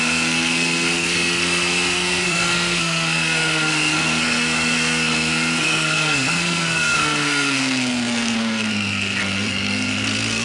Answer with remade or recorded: remade